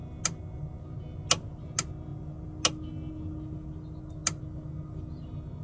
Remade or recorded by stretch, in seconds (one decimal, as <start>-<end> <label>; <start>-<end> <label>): 0.0-5.6 recorded